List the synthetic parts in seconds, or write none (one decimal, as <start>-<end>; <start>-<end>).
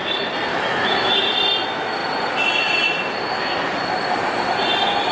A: 0.5-1.2